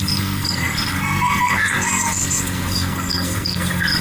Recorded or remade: remade